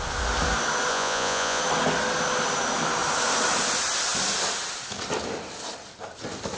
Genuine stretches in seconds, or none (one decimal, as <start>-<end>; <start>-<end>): 0.0-0.9; 1.6-6.6